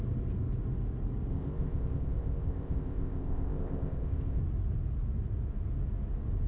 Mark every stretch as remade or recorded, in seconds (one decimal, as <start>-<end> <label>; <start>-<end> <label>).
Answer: 0.0-1.3 recorded; 1.3-4.4 remade; 4.4-6.5 recorded